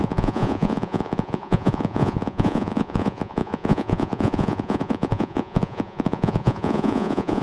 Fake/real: fake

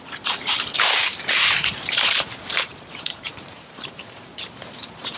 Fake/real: fake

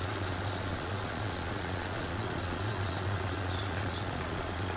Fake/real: fake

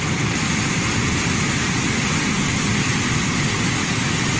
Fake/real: real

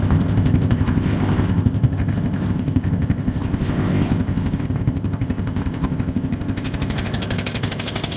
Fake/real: fake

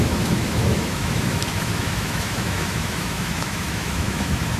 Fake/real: fake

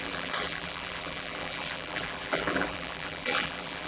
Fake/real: fake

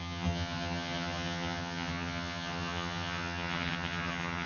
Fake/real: fake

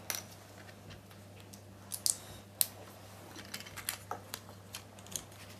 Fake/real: real